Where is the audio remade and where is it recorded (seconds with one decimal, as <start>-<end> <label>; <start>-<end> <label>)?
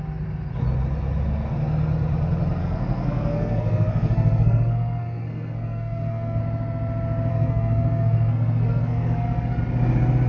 0.0-2.6 recorded; 2.6-6.4 remade; 6.4-7.3 recorded; 7.3-9.6 remade; 9.6-10.3 recorded